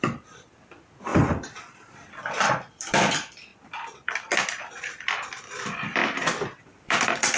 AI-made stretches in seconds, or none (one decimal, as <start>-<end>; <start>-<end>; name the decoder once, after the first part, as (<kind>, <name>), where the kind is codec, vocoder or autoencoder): 0.0-3.5 (vocoder, BigVGAN v2); 4.8-6.0; 6.6-7.4